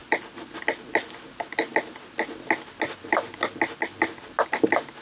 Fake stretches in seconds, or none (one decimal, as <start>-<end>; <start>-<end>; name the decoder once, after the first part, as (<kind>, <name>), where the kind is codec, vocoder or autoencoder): none